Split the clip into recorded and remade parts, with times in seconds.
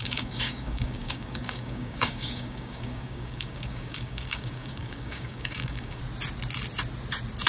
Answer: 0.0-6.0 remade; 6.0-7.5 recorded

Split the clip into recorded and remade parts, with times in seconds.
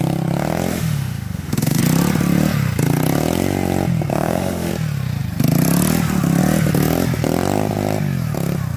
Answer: 0.0-0.7 recorded; 0.7-1.8 remade; 1.8-4.1 recorded; 4.1-4.7 remade; 4.7-8.8 recorded